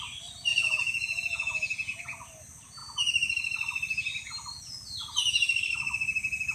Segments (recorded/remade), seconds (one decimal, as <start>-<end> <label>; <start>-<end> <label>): 0.0-0.5 recorded; 0.5-2.0 remade; 2.0-6.5 recorded